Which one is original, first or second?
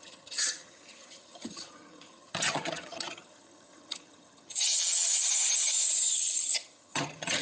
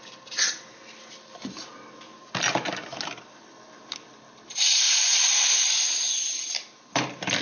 second